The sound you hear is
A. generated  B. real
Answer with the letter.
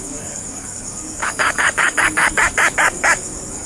A